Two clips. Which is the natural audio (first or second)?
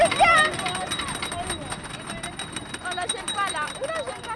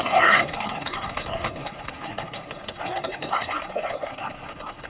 first